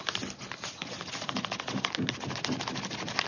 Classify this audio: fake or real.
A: real